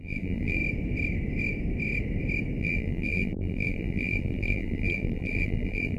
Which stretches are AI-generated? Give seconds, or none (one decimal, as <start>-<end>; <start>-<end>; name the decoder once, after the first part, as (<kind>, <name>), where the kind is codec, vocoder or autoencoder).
0.0-0.6 (vocoder, BigVGAN v2); 2.6-6.0